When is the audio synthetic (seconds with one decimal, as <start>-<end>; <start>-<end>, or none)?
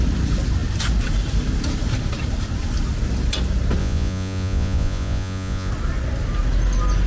3.8-5.7